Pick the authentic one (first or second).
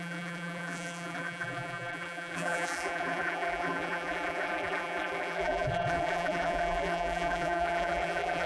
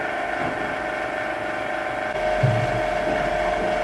second